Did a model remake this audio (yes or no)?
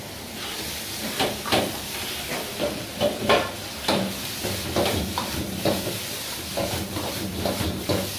yes